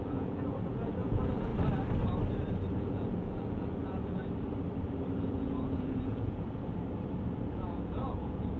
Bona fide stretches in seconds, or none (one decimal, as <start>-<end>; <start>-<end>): 1.5-2.8; 4.2-5.2; 6.6-7.5